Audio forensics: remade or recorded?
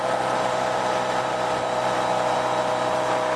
recorded